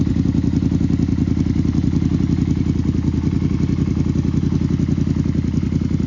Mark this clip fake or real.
real